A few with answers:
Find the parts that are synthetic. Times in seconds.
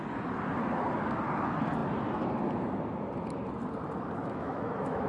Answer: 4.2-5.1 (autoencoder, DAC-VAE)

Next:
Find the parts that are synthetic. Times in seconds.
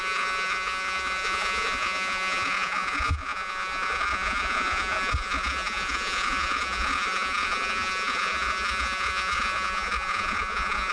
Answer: 0.0-10.9 (vocoder, Vocos)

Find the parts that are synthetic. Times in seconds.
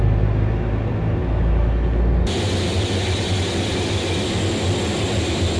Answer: none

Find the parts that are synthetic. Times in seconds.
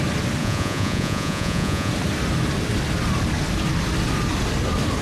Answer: 0.4-1.9 (vocoder, Vocos)